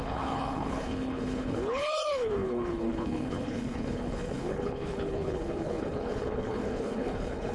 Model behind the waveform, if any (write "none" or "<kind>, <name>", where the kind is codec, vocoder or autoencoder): codec, HILCodec